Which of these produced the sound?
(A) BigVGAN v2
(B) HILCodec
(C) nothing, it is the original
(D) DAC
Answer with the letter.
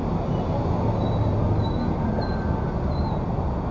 C